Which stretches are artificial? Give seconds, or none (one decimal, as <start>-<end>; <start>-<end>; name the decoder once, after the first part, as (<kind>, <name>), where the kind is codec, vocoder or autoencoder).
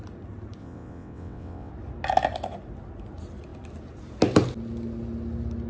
0.6-1.7 (vocoder, WaveNeXt)